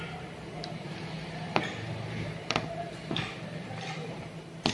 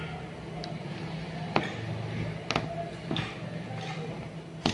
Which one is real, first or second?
second